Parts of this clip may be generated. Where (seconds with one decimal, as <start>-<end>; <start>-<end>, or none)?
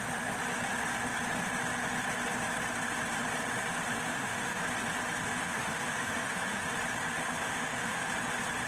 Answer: 4.0-4.6; 5.2-6.7; 7.2-8.1